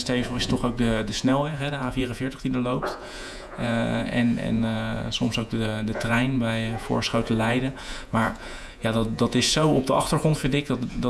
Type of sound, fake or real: fake